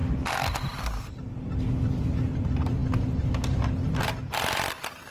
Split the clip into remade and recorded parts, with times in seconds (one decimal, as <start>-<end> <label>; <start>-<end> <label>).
0.0-5.1 recorded